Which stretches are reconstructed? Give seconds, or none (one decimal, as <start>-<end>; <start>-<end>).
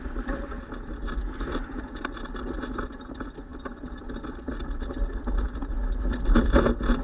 none